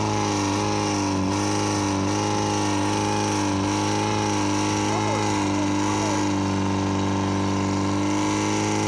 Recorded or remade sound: recorded